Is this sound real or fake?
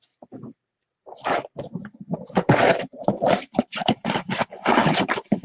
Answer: fake